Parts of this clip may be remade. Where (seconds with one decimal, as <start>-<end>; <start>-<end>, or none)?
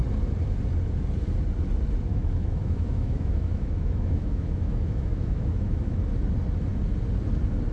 2.1-6.0